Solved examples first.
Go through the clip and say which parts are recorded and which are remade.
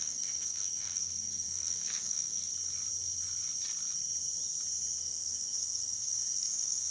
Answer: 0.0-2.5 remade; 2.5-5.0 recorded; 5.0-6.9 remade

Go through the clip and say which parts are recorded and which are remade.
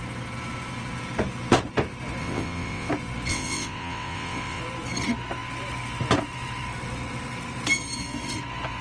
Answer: 0.0-2.2 recorded; 2.2-2.9 remade; 2.9-3.3 recorded; 3.3-4.6 remade; 4.6-8.8 recorded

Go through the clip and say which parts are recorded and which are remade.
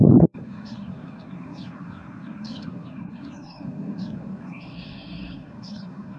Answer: 0.0-6.2 remade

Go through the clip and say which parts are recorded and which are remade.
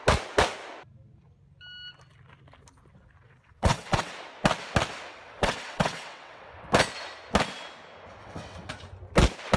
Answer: 0.0-3.2 recorded; 3.2-4.1 remade; 4.1-5.1 recorded; 5.1-6.7 remade; 6.7-8.2 recorded; 8.2-8.7 remade; 8.7-9.6 recorded